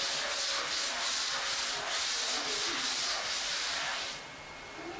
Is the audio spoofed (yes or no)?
no